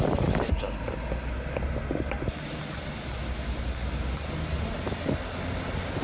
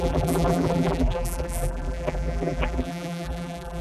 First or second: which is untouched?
first